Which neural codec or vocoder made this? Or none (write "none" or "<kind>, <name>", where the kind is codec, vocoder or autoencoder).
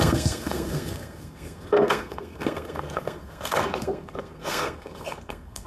codec, SNAC